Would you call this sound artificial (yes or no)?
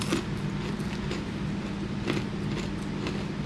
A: no